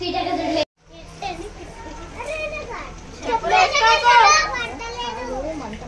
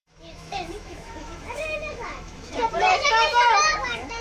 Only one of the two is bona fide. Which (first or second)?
first